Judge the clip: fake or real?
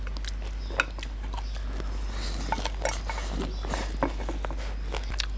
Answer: real